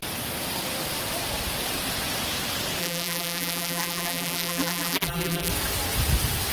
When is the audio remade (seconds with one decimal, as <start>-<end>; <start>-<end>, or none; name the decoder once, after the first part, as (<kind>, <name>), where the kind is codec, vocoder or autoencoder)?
2.8-5.5 (vocoder, BigVGAN v2)